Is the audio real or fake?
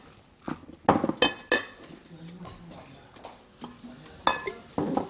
real